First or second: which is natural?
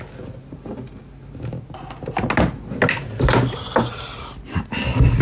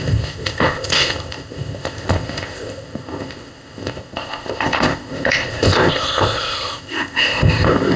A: first